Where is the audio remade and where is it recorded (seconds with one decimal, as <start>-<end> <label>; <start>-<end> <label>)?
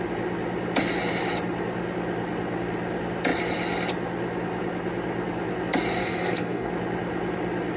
0.0-6.0 recorded; 6.0-6.7 remade; 6.7-7.8 recorded